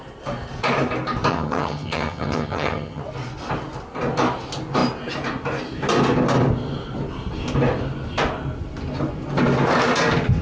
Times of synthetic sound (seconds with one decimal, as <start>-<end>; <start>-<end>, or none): 1.3-3.0